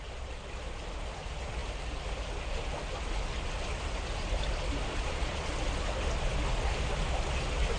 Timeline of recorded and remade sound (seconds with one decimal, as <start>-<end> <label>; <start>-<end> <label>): 0.0-4.9 recorded; 4.9-5.5 remade; 5.5-7.8 recorded